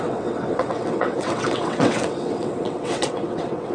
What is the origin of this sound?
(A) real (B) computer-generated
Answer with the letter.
B